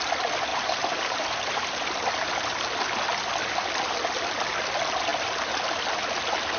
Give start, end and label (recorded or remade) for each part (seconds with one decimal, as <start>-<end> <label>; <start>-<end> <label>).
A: 0.0-0.5 recorded; 0.5-1.9 remade; 1.9-6.6 recorded